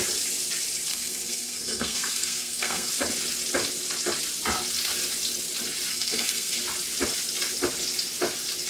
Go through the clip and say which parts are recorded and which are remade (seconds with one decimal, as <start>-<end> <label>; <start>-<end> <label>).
0.0-0.9 recorded; 0.9-2.9 remade; 2.9-5.9 recorded; 5.9-6.6 remade; 6.6-8.7 recorded

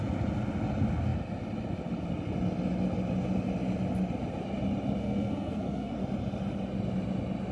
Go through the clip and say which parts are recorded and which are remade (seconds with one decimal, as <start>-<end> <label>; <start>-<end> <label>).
0.0-5.0 recorded; 5.0-6.0 remade; 6.0-7.5 recorded

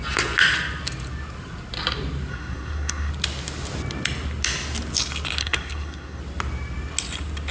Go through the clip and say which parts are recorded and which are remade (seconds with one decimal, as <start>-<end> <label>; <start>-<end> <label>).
0.0-2.3 recorded; 2.3-3.1 remade; 3.1-5.4 recorded; 5.4-6.2 remade; 6.2-7.5 recorded

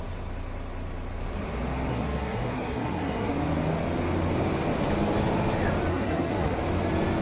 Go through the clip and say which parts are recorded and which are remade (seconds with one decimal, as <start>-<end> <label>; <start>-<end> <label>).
0.0-1.9 recorded; 1.9-3.3 remade; 3.3-5.9 recorded; 5.9-6.6 remade; 6.6-7.2 recorded

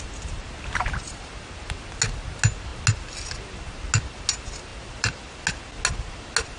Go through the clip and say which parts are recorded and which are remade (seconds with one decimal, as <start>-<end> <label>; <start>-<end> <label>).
0.0-6.6 recorded

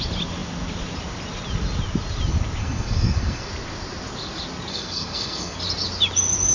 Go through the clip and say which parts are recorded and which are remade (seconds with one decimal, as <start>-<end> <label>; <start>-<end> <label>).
0.0-2.6 recorded; 2.6-3.5 remade; 3.5-4.7 recorded; 4.7-5.6 remade; 5.6-6.5 recorded

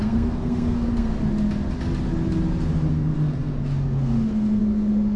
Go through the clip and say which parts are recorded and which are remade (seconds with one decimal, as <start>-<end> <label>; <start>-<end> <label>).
0.0-1.1 remade; 1.1-2.9 recorded; 2.9-5.2 remade